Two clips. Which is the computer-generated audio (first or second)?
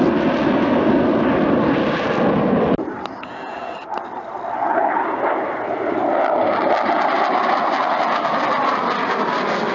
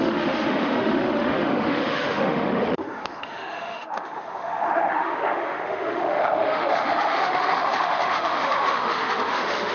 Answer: second